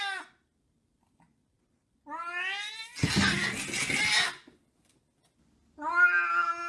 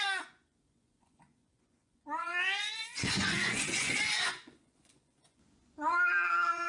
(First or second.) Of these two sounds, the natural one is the first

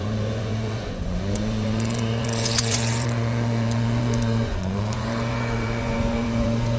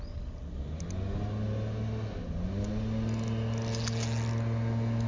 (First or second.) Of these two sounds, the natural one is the second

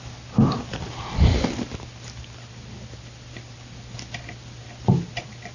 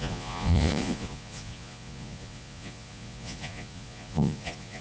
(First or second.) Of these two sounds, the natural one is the first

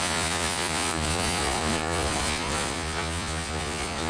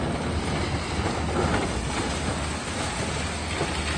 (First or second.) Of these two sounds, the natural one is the second